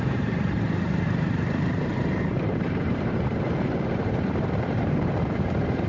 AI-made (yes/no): yes